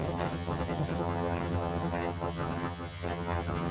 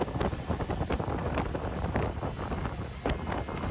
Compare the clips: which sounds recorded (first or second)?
second